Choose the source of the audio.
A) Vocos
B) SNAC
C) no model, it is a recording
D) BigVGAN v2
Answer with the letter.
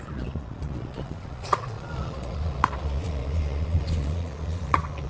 A